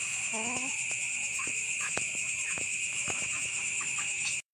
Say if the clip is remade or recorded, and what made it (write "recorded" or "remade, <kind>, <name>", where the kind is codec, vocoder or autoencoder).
remade, autoencoder, DAC-VAE